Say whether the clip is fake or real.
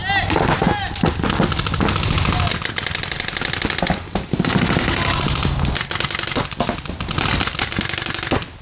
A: real